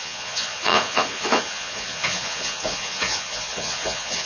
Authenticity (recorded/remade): remade